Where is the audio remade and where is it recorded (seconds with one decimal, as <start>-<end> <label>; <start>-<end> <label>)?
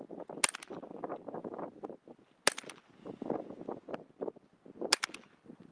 0.0-5.7 recorded